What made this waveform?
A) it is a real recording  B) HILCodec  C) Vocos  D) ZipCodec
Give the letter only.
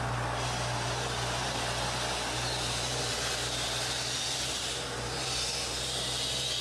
A